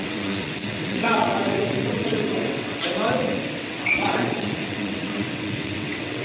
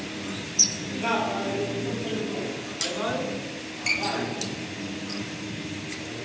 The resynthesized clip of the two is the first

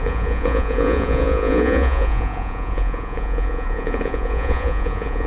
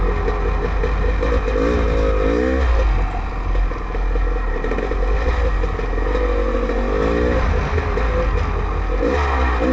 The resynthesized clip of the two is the first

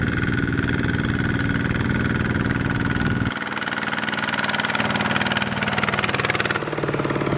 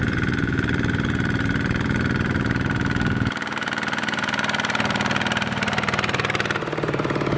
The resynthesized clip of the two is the second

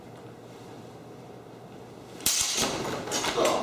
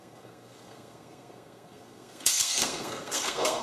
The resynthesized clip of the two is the second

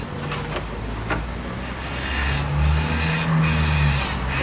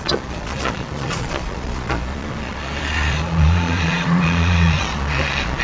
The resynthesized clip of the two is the second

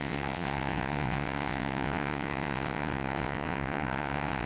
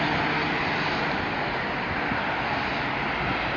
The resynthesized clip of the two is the first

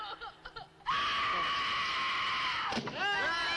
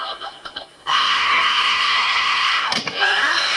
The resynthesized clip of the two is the second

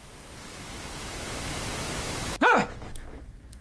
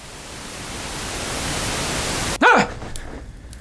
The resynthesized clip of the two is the first